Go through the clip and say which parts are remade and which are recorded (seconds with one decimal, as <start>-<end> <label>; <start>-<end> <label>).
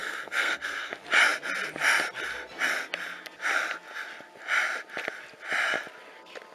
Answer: 0.0-0.9 remade; 0.9-6.5 recorded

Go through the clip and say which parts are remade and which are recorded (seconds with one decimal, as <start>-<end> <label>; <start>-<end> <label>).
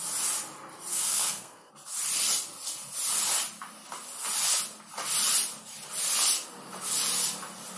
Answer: 0.0-0.9 recorded; 0.9-1.7 remade; 1.7-7.8 recorded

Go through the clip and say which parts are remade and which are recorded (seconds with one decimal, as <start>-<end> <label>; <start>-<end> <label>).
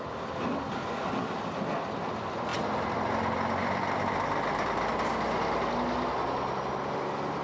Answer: 0.0-7.4 recorded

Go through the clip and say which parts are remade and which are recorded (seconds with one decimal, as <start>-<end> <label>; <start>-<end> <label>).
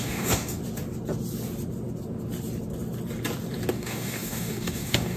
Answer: 0.0-0.6 remade; 0.6-3.7 recorded; 3.7-5.2 remade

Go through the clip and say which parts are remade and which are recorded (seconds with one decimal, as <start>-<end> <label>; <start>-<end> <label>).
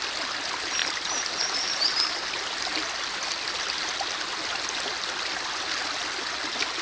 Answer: 0.0-6.8 recorded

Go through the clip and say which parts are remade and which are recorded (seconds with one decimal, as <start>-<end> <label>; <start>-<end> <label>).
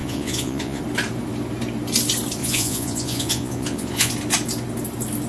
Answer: 0.0-0.8 remade; 0.8-2.4 recorded; 2.4-4.1 remade; 4.1-5.3 recorded